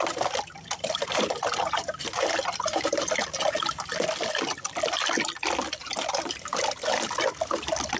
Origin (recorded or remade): recorded